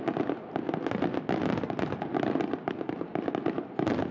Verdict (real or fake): real